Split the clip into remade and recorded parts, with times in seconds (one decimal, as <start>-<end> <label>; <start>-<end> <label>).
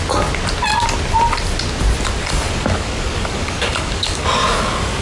0.0-2.2 recorded; 2.2-5.0 remade